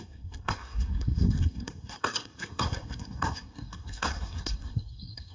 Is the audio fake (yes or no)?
yes